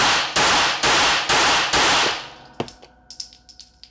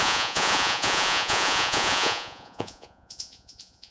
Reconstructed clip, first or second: second